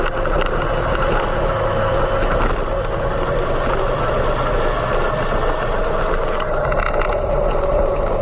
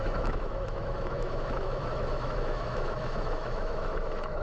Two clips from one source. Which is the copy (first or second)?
second